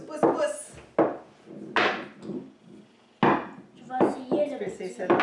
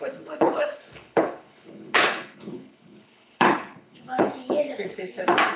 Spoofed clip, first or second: second